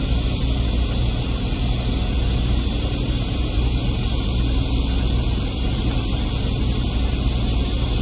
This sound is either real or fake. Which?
real